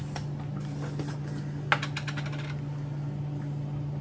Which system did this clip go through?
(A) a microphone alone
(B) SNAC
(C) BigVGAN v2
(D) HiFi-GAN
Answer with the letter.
A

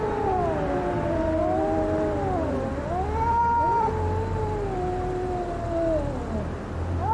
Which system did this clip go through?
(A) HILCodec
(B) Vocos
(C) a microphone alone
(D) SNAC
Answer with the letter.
C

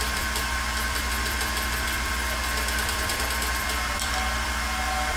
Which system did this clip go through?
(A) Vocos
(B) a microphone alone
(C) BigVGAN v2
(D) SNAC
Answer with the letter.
C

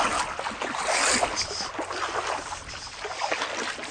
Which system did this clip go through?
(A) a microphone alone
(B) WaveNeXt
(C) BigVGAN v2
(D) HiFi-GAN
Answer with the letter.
A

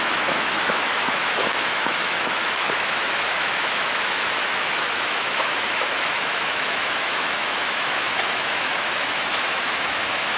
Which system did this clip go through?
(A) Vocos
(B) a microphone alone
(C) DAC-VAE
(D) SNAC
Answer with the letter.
C